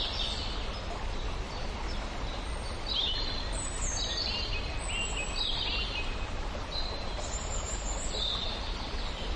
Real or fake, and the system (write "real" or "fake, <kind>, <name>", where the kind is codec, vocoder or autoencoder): real